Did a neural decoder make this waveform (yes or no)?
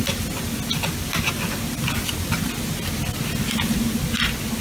no